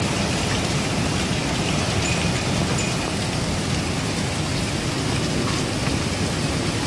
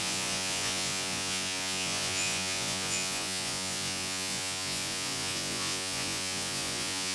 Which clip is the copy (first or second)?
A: second